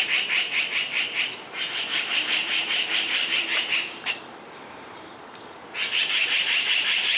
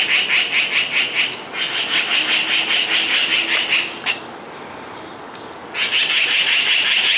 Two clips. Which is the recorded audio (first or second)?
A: second